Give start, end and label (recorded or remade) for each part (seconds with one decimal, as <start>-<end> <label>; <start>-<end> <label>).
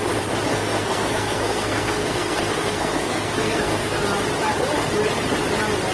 0.0-0.5 recorded; 0.5-4.0 remade; 4.0-5.9 recorded